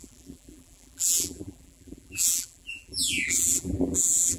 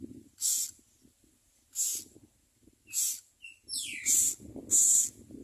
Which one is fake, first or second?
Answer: first